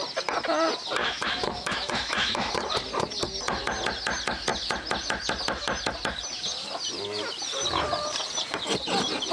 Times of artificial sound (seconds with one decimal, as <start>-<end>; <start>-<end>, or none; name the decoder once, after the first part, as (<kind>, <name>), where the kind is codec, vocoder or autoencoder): 1.0-2.5 (autoencoder, DAC-VAE)